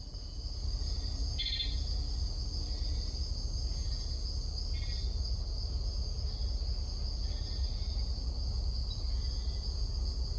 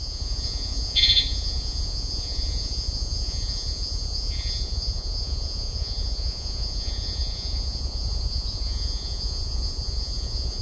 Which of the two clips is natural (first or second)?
first